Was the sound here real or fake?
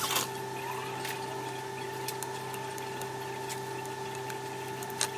real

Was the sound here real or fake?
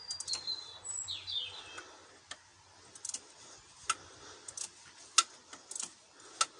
real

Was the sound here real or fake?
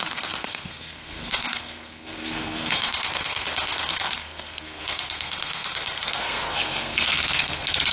fake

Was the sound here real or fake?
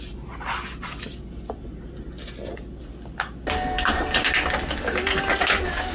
real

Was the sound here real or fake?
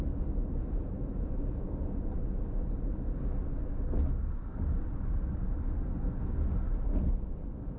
real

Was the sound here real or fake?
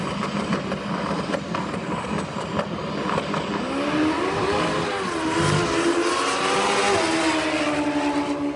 real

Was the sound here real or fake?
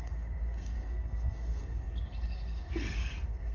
fake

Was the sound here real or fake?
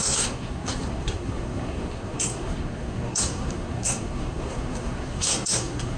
fake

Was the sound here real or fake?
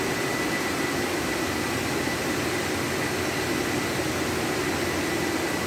real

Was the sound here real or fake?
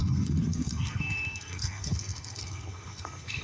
fake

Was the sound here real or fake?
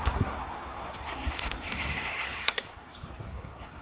fake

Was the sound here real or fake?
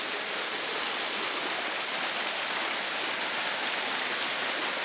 real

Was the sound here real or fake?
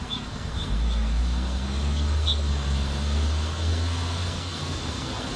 fake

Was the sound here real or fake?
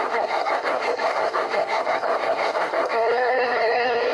fake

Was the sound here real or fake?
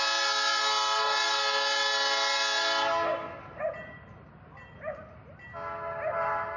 real